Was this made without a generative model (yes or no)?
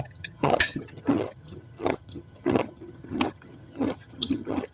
no